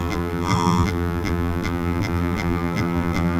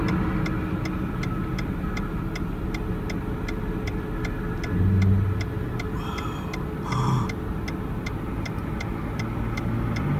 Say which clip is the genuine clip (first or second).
second